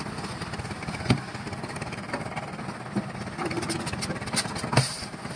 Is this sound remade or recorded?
recorded